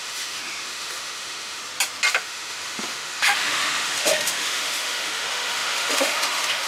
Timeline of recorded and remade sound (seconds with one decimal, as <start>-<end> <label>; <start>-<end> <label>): 0.0-1.6 remade; 1.6-2.1 recorded; 2.1-6.7 remade